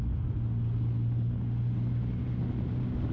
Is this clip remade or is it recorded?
recorded